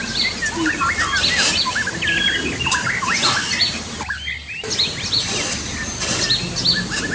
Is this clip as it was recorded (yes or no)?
yes